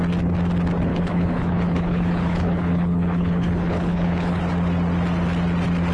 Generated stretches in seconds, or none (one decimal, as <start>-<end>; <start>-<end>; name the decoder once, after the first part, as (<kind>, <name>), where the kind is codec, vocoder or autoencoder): 0.9-4.4 (codec, HILCodec)